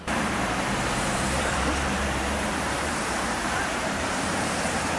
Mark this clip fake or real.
fake